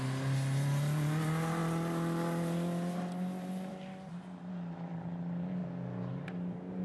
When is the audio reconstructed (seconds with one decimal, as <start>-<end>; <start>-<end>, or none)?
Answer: none